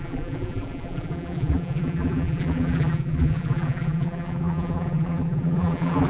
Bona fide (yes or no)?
no